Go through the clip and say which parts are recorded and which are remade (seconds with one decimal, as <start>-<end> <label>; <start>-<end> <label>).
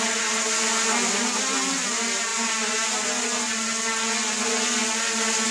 0.0-5.5 recorded